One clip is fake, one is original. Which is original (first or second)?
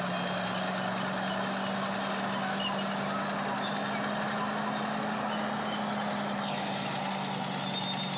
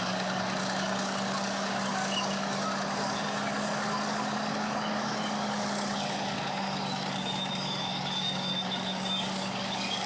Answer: first